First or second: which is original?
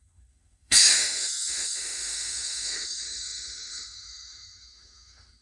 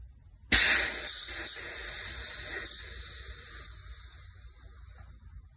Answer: second